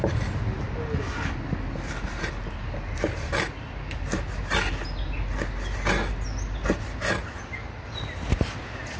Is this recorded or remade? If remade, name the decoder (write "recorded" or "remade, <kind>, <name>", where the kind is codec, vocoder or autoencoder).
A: recorded